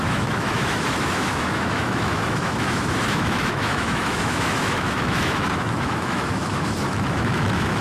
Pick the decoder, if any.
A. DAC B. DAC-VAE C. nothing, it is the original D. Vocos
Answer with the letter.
B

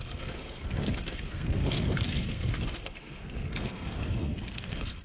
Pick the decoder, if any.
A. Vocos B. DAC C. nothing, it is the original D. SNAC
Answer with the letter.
D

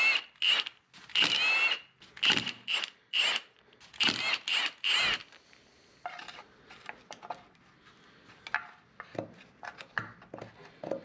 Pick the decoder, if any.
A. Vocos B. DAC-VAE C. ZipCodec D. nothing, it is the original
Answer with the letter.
D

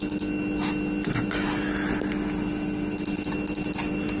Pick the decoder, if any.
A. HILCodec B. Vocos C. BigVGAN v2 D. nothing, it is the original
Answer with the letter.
D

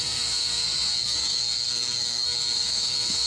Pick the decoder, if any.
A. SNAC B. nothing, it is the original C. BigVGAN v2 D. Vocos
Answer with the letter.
A